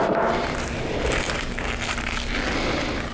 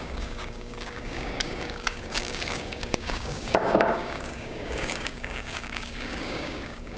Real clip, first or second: first